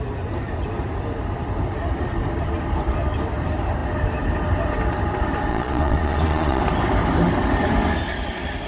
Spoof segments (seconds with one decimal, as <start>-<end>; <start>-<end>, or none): 5.5-6.6